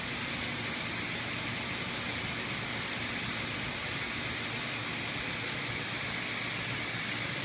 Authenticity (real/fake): real